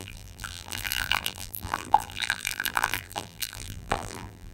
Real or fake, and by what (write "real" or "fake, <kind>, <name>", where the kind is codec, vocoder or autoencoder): fake, vocoder, BigVGAN v2